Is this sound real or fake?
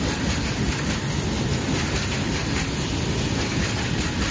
real